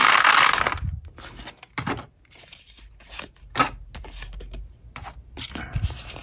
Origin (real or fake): real